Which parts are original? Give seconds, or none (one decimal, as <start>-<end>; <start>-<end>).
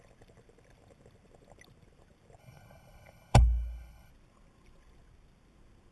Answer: 0.0-2.4; 4.1-5.9